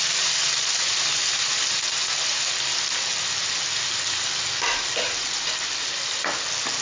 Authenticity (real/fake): real